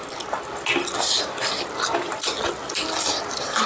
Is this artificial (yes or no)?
no